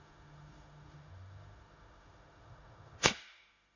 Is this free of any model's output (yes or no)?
no